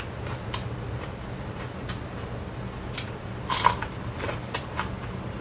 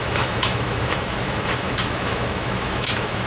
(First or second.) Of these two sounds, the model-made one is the second